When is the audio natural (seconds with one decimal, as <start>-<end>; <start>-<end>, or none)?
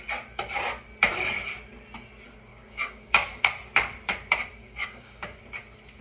0.0-2.5; 3.5-4.6; 5.4-6.0